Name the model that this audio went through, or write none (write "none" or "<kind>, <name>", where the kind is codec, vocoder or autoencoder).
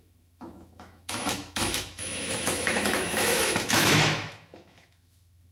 autoencoder, DAC-VAE